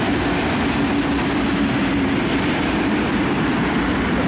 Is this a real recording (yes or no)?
yes